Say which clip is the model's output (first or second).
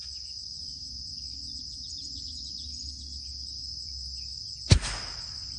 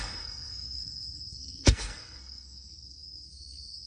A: second